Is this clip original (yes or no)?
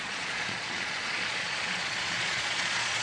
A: no